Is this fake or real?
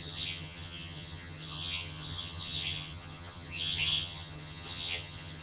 fake